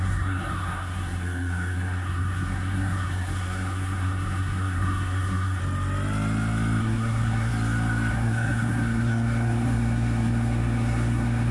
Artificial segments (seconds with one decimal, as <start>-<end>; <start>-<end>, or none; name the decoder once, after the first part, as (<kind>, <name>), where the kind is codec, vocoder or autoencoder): 0.0-5.6 (codec, SNAC); 6.8-7.5; 8.1-11.5